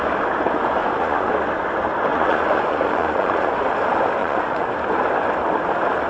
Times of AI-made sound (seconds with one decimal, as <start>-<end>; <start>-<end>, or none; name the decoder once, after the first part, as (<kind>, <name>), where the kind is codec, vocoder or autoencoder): 0.8-1.3 (vocoder, Vocos); 2.1-3.5; 4.2-4.7